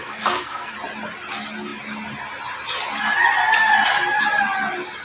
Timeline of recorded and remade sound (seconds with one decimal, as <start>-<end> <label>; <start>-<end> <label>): 0.0-0.7 remade; 0.7-5.0 recorded